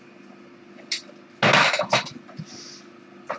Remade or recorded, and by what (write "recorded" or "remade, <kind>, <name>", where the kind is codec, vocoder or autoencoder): recorded